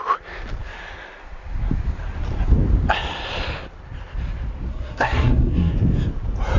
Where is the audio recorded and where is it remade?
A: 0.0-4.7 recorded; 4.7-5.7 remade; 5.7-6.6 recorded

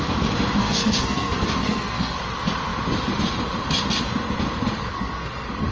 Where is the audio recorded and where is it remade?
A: 0.0-0.6 recorded; 0.6-2.2 remade; 2.2-4.9 recorded; 4.9-5.7 remade

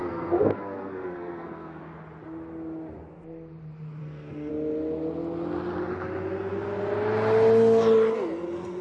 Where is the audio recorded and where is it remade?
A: 0.0-1.8 remade; 1.8-4.0 recorded; 4.0-4.5 remade; 4.5-8.8 recorded

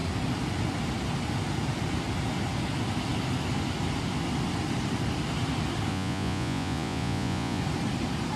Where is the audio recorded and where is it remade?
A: 0.0-5.9 recorded; 5.9-7.6 remade; 7.6-8.4 recorded

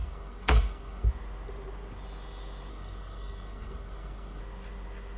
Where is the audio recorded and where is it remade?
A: 0.0-1.1 remade; 1.1-2.7 recorded; 2.7-4.4 remade; 4.4-5.2 recorded

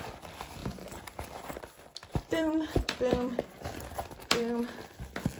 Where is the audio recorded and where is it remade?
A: 0.0-0.6 recorded; 0.6-1.6 remade; 1.6-2.0 recorded; 2.0-4.6 remade; 4.6-5.4 recorded